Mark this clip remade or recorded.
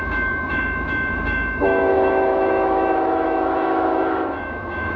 remade